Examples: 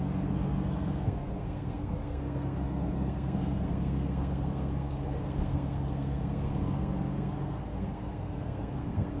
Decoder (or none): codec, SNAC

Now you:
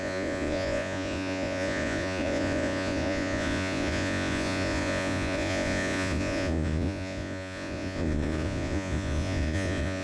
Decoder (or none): vocoder, Vocos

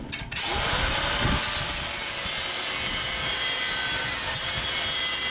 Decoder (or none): none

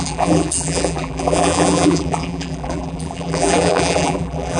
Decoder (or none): vocoder, BigVGAN v2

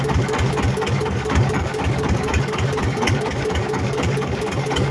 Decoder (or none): codec, DAC